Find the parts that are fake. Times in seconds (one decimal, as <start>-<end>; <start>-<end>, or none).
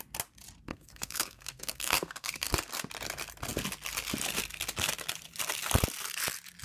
0.7-2.5